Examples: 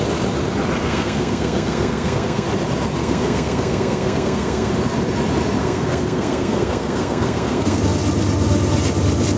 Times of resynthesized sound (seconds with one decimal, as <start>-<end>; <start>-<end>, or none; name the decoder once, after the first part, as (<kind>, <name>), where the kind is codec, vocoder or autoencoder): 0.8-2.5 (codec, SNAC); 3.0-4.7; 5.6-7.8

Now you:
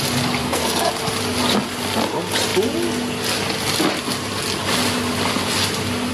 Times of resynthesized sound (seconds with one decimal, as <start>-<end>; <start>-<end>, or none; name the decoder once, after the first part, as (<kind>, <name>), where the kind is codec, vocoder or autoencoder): 0.4-0.9 (codec, SNAC)

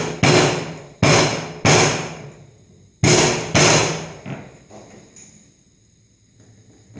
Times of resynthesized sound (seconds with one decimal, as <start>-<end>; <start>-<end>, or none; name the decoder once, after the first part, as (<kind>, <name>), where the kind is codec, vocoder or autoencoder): none

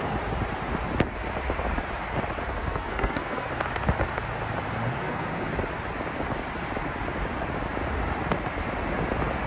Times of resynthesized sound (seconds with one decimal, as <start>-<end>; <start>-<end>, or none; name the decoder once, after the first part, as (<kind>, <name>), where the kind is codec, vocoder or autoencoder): 2.6-3.5 (codec, SNAC); 5.0-5.5

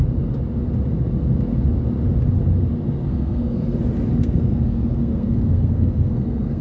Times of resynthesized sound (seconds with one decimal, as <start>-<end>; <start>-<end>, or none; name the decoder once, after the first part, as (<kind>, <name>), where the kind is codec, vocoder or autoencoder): 3.1-3.8 (codec, SNAC); 4.2-6.6

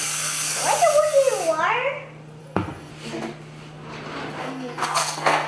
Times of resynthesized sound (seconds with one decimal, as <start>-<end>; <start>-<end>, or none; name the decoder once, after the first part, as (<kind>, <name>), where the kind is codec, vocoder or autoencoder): 0.0-0.6 (codec, SNAC); 2.4-2.9; 4.4-5.5

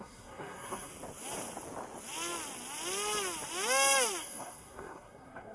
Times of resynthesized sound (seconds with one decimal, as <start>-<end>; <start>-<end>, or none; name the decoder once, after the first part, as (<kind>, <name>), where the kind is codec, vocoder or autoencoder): 0.0-0.9 (codec, SNAC); 4.2-5.5

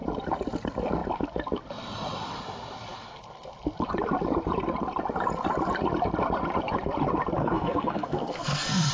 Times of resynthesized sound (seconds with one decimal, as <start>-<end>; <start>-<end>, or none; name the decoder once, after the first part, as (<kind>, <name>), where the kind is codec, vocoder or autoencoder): 7.4-8.9 (codec, SNAC)